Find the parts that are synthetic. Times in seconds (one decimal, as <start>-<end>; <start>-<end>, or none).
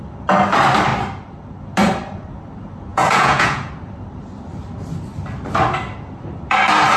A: 2.9-3.7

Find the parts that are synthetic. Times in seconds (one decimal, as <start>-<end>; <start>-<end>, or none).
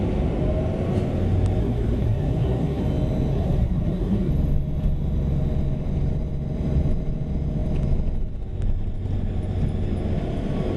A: 1.6-2.8; 3.3-4.3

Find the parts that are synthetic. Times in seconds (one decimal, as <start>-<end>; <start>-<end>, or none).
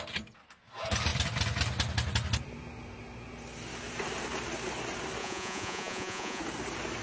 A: 5.2-6.4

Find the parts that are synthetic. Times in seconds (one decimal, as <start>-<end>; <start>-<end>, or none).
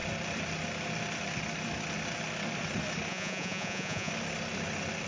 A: 3.1-4.1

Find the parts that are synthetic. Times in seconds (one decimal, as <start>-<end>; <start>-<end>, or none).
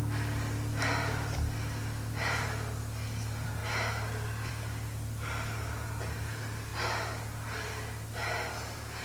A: none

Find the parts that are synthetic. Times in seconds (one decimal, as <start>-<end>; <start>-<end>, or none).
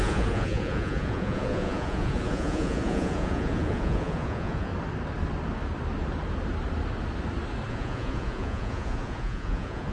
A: 0.0-4.7; 7.7-9.9